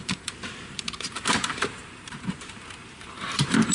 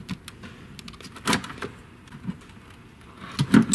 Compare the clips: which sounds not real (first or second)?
first